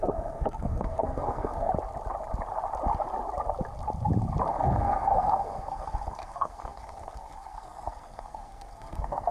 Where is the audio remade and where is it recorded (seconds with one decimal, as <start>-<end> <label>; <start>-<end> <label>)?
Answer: 0.0-1.7 remade; 1.7-4.5 recorded; 4.5-9.3 remade